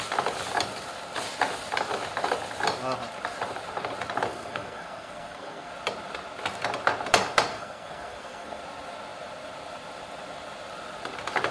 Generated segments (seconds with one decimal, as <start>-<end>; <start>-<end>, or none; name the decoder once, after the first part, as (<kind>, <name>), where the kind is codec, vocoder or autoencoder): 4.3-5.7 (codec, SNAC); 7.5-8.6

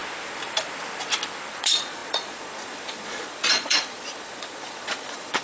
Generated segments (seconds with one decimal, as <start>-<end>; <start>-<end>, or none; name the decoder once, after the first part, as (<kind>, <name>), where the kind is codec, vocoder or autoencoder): 1.5-5.4 (vocoder, Vocos)

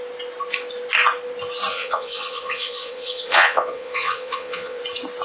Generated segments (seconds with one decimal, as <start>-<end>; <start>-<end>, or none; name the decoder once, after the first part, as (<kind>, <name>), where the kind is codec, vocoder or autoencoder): 1.7-4.8 (vocoder, Vocos)

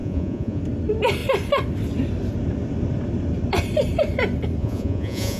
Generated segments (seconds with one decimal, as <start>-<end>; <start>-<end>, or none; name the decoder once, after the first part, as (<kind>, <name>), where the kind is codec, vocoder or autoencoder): 0.0-0.6 (vocoder, Vocos); 4.6-5.4

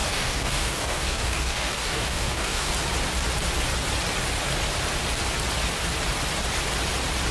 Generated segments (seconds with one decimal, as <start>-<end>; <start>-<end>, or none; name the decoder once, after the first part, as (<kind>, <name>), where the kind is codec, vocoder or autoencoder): 0.0-2.7 (codec, DAC)